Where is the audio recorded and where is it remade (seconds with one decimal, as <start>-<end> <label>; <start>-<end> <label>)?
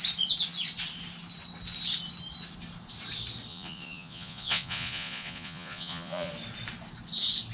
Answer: 0.0-3.5 recorded; 3.5-6.3 remade; 6.3-7.5 recorded